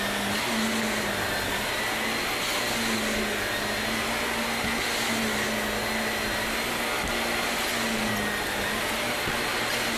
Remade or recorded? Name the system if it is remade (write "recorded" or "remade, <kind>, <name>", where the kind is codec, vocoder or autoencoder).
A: recorded